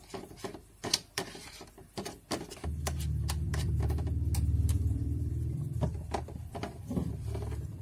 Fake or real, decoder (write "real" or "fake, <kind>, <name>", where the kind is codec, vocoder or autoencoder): fake, vocoder, BigVGAN v2